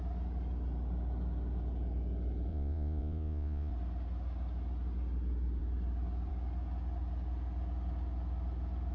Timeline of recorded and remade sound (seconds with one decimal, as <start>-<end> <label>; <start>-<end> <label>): 0.0-2.5 recorded; 2.5-3.7 remade; 3.7-8.9 recorded